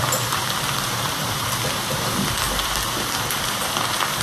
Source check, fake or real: fake